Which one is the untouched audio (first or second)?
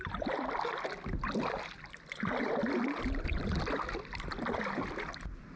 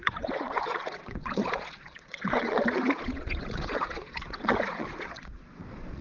first